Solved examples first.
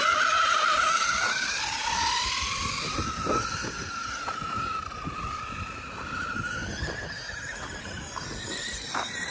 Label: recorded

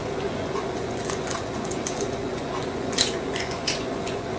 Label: remade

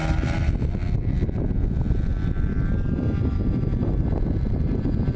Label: recorded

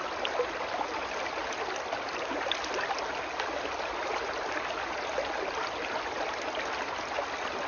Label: recorded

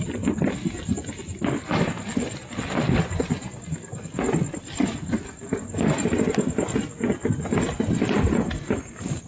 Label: recorded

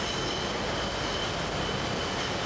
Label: recorded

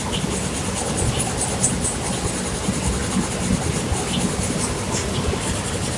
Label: recorded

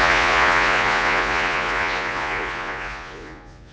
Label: remade